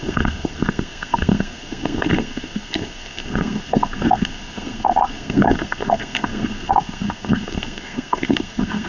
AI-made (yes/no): yes